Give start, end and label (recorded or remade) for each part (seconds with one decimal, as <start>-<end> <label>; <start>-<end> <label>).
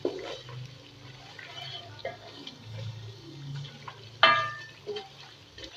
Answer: 0.0-2.0 recorded; 2.0-3.7 remade; 3.7-5.8 recorded